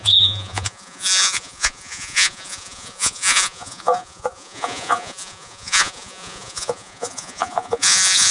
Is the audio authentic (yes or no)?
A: no